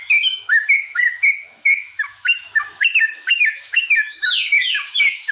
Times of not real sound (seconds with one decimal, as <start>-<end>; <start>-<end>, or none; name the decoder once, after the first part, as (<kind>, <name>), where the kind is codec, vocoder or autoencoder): 0.0-5.3 (autoencoder, DAC-VAE)